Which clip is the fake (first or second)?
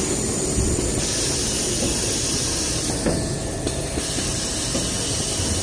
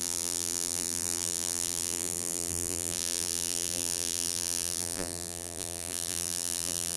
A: second